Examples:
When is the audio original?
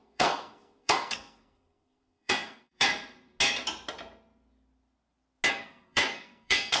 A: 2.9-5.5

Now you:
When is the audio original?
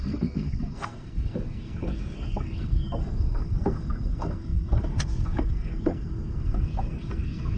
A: none